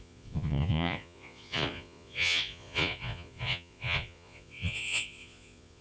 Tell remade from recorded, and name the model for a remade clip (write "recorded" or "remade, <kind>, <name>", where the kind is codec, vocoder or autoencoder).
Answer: remade, vocoder, Vocos